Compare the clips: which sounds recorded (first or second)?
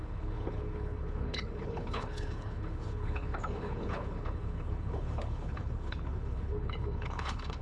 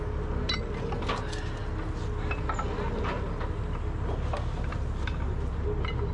second